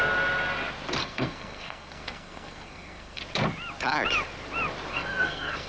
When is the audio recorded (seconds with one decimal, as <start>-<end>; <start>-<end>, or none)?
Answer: 0.0-1.0; 3.2-4.9